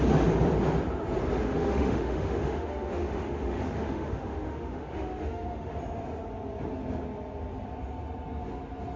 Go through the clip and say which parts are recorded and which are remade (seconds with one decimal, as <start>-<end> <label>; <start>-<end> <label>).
0.0-1.4 recorded; 1.4-5.7 remade; 5.7-9.0 recorded